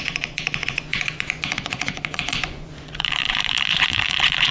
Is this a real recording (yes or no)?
no